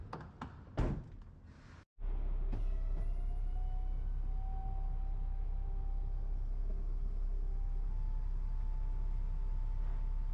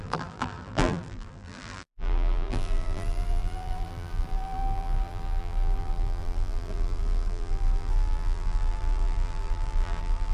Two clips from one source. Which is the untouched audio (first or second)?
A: first